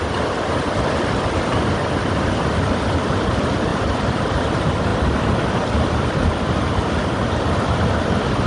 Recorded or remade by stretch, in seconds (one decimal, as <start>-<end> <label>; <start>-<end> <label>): 0.0-8.5 recorded